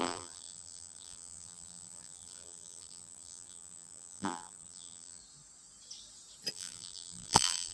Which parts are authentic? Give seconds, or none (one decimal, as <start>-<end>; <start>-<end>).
5.2-6.5